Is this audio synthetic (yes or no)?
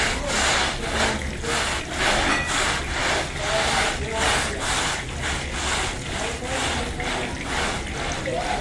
no